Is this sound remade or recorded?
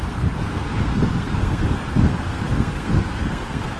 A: remade